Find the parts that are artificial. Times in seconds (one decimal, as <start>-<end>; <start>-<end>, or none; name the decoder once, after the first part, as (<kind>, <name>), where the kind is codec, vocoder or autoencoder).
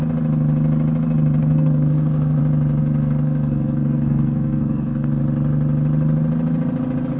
1.4-2.4 (codec, SNAC); 2.8-5.2